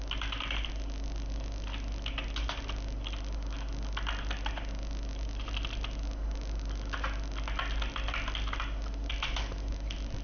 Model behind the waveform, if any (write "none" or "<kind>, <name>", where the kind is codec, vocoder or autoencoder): none